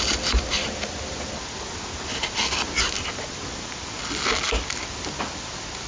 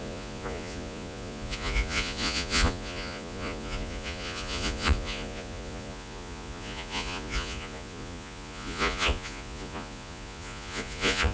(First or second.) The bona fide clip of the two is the first